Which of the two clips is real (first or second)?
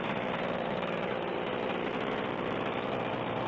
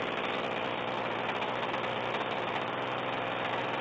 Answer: second